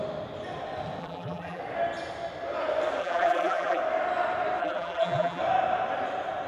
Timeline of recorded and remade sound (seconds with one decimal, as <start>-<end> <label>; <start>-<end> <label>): 0.0-1.0 recorded; 1.0-1.6 remade; 1.6-3.0 recorded; 3.0-3.8 remade; 3.8-4.6 recorded; 4.6-5.4 remade; 5.4-6.5 recorded